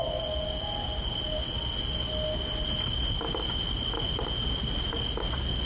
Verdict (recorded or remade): recorded